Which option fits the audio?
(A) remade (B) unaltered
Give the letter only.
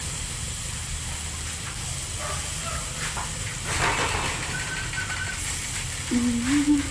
B